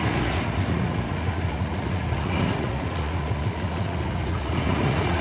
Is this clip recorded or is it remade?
remade